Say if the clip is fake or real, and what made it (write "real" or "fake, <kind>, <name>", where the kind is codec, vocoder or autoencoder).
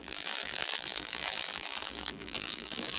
fake, vocoder, BigVGAN v2